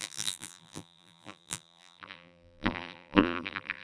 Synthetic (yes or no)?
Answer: yes